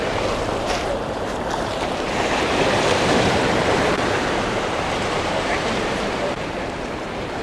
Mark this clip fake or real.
fake